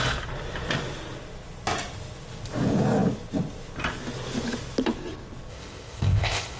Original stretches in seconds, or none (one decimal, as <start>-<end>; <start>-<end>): 0.0-5.5